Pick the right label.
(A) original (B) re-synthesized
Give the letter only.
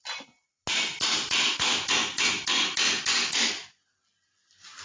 A